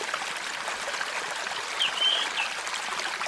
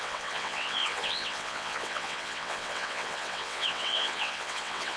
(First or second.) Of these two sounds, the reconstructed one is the second